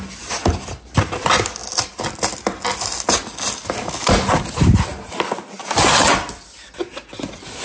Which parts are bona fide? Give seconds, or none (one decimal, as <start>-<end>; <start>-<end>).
0.0-7.6